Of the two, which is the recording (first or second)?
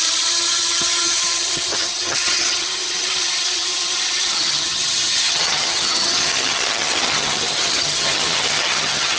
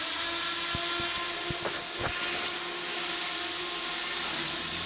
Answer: second